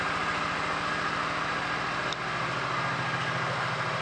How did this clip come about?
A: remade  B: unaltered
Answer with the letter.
B